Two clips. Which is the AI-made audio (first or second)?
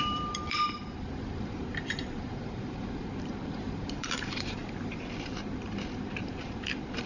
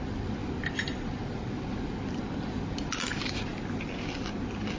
first